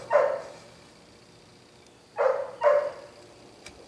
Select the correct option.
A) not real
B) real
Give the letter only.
B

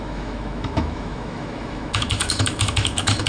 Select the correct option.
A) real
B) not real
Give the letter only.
B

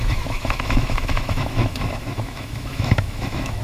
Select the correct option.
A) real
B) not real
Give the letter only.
B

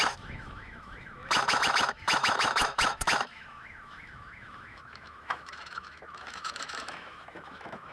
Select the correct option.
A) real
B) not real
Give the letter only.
B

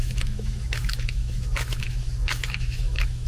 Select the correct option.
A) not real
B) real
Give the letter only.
A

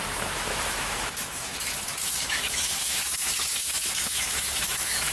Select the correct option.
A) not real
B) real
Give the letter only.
A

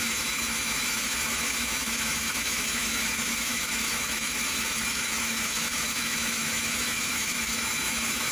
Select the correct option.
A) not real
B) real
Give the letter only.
A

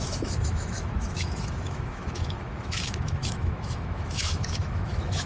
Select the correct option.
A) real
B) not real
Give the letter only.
B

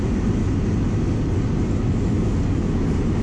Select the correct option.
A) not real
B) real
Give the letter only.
B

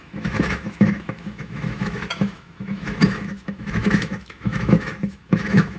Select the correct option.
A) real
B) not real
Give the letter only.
B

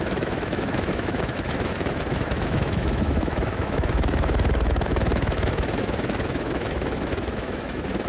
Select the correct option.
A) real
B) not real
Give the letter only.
B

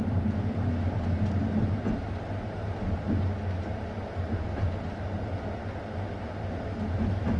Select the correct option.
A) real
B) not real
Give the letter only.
A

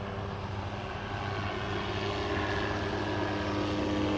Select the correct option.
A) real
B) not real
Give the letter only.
A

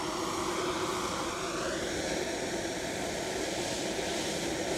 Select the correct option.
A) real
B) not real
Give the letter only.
A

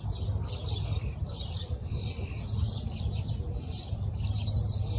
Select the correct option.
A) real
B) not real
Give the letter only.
A